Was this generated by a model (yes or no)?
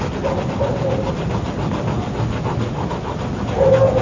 no